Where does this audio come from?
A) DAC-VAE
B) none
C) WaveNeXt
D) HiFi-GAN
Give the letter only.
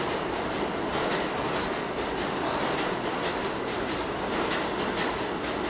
B